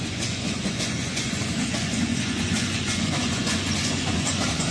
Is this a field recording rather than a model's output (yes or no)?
no